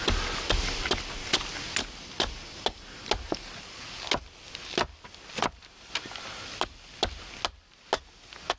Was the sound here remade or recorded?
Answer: recorded